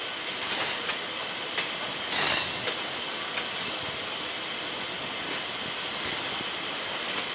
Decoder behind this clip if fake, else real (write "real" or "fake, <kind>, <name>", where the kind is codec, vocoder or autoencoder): real